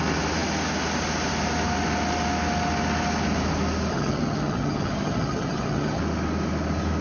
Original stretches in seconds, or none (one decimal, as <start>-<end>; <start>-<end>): 0.0-3.9; 6.0-7.0

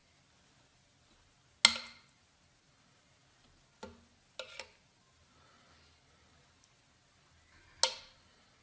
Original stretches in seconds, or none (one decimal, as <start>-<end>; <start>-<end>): 0.0-8.6

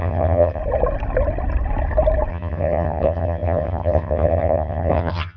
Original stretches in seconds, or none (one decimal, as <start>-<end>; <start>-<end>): 0.6-2.3

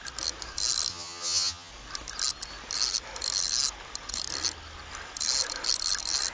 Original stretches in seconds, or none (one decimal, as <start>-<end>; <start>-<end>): 0.0-0.9; 1.7-6.3

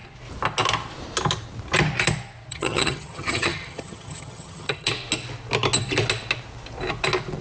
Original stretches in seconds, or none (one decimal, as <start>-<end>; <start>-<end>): 0.0-2.5; 4.9-7.4